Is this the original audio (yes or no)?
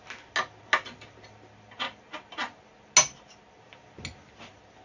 yes